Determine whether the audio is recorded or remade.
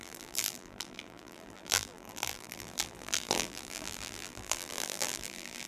remade